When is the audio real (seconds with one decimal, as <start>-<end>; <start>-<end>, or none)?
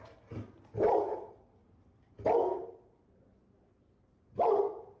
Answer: 0.0-5.0